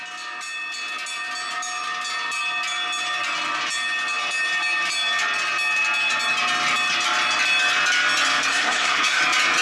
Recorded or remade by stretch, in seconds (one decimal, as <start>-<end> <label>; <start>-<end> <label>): 0.0-8.5 recorded; 8.5-9.2 remade; 9.2-9.6 recorded